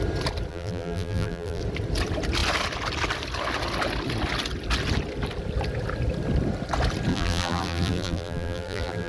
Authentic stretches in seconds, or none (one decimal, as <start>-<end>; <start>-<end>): 0.0-0.5; 1.6-7.1